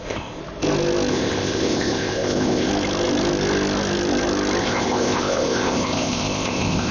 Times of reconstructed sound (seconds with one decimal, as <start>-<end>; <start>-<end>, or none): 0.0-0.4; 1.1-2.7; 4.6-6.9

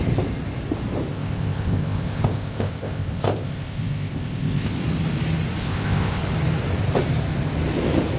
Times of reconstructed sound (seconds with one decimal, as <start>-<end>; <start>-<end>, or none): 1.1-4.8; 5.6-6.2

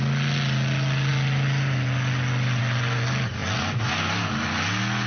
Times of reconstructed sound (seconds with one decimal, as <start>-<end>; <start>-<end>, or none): none